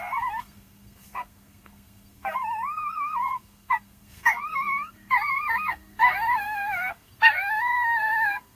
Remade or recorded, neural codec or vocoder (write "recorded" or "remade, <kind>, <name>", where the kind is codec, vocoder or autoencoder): remade, codec, SNAC